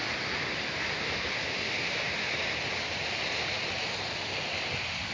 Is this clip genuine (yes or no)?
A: yes